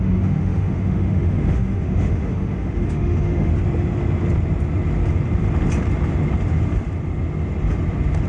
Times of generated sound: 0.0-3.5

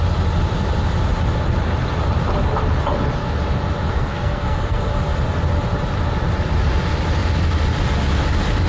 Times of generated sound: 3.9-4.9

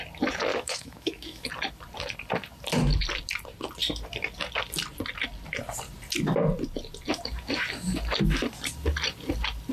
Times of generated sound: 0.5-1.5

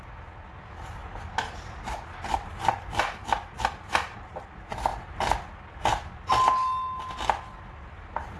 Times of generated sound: none